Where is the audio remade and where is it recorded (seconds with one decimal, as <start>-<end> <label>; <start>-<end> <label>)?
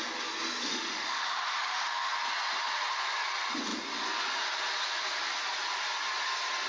0.0-0.7 recorded; 0.7-2.1 remade; 2.1-6.7 recorded